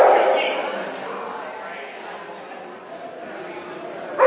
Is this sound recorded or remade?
recorded